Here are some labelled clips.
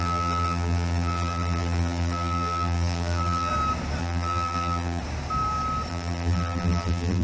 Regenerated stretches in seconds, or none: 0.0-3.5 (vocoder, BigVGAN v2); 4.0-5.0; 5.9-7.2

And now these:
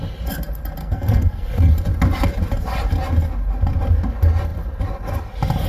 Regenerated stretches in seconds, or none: 0.8-1.7 (codec, SNAC)